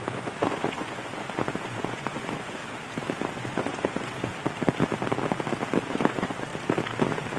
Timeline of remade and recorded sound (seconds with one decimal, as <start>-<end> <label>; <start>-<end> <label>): 0.0-2.6 remade; 2.6-3.3 recorded; 3.3-4.3 remade; 4.3-5.8 recorded; 5.8-6.5 remade; 6.5-7.4 recorded